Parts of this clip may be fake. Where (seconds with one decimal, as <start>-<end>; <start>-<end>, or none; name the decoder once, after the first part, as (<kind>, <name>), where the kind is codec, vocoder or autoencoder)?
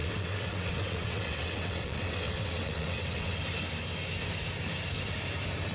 0.0-3.4 (vocoder, WaveNeXt)